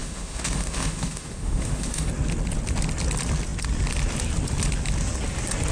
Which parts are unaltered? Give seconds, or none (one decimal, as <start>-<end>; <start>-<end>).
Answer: 2.1-5.7

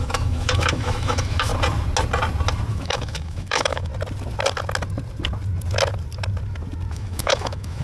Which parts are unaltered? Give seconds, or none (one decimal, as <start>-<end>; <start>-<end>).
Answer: 1.5-2.7; 3.9-6.9

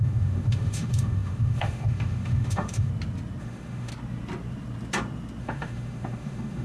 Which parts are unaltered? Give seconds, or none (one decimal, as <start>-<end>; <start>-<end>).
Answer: 2.9-3.4; 3.9-5.4

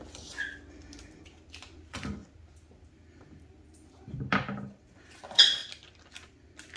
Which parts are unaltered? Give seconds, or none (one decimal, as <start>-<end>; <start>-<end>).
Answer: 0.0-6.8

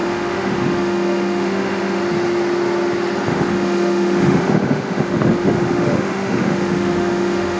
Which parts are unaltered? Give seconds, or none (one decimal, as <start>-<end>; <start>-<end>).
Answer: 2.0-3.3

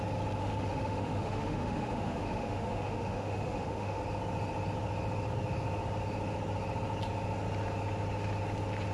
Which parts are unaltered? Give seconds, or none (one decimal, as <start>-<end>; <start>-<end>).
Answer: 0.0-0.4; 4.0-8.9